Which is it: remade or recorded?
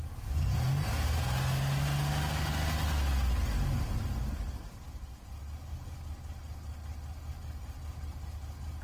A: recorded